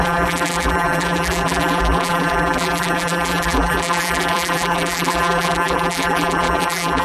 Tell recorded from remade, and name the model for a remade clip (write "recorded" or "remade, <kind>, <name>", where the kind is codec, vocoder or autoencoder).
remade, vocoder, BigVGAN v2